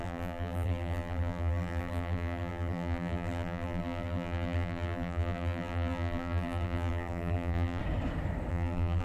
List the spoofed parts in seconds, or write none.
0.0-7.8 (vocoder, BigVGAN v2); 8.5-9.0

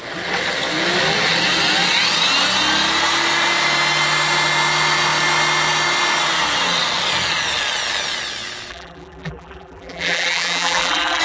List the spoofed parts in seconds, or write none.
8.7-11.2 (vocoder, BigVGAN v2)